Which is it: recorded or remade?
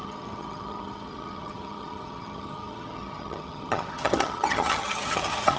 remade